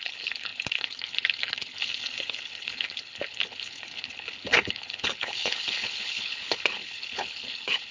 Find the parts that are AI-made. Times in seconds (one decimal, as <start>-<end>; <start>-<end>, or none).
0.0-7.9